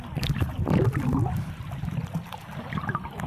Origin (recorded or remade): recorded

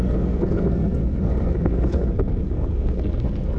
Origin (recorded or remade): remade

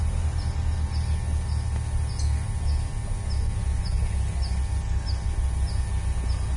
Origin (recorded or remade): recorded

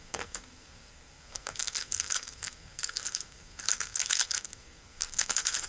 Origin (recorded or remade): remade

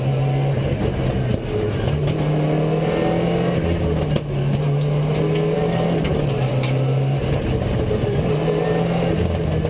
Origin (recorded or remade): recorded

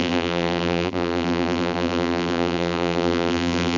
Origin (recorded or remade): remade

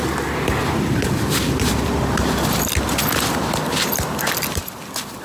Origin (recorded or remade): remade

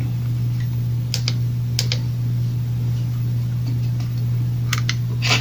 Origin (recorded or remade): recorded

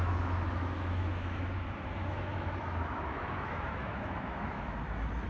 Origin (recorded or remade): remade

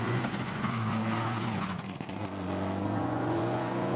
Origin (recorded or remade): remade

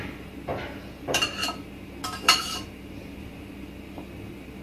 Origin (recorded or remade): remade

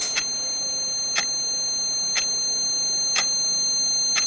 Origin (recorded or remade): recorded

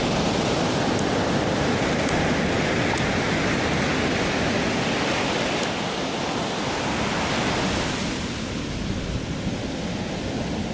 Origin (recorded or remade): recorded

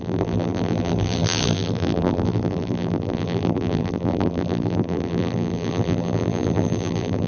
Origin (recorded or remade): remade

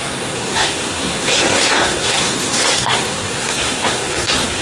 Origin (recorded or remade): remade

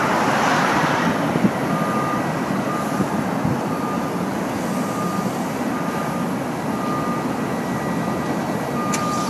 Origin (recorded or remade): recorded